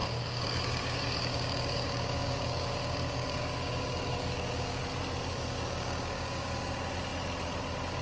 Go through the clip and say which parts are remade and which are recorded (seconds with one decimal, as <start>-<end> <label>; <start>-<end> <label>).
0.0-4.8 remade; 4.8-5.3 recorded; 5.3-6.5 remade; 6.5-8.0 recorded